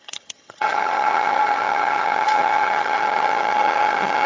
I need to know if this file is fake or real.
fake